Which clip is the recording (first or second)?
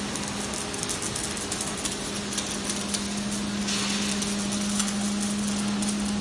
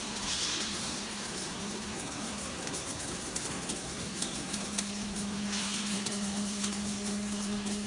first